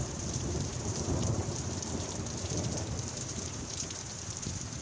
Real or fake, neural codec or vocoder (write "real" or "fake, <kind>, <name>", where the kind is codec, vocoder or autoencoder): fake, vocoder, BigVGAN v2